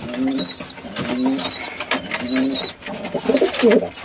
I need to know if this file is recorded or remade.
recorded